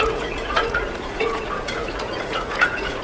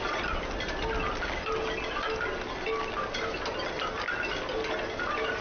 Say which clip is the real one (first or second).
second